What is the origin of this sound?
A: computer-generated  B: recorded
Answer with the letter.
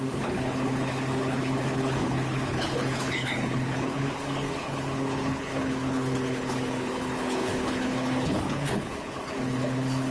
A